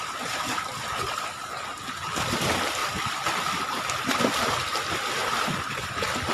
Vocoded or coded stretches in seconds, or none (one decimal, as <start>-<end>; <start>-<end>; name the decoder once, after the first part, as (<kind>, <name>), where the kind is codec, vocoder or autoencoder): 2.8-3.6 (vocoder, BigVGAN v2); 5.2-6.3